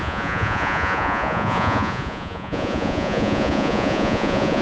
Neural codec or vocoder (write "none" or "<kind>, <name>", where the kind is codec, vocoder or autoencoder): vocoder, Vocos